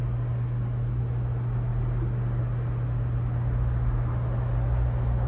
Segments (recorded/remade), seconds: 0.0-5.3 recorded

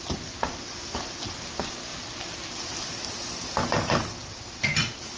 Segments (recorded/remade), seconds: 0.0-4.2 recorded; 4.2-5.2 remade

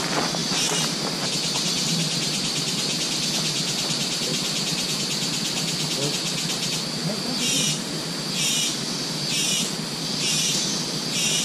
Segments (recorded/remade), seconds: 0.0-0.4 recorded; 0.4-5.0 remade; 5.0-7.0 recorded; 7.0-8.0 remade; 8.0-11.4 recorded

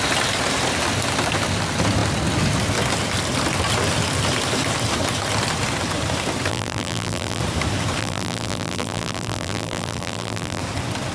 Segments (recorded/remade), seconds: 0.0-6.5 recorded; 6.5-7.4 remade; 7.4-8.0 recorded; 8.0-10.6 remade; 10.6-11.1 recorded

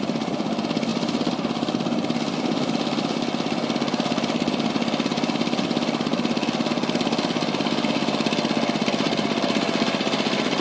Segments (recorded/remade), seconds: 0.0-10.6 recorded

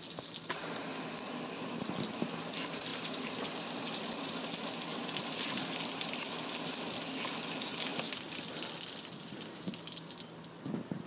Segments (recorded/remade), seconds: 0.0-2.9 recorded; 2.9-4.5 remade; 4.5-4.9 recorded; 4.9-6.1 remade; 6.1-7.9 recorded; 7.9-9.6 remade; 9.6-11.1 recorded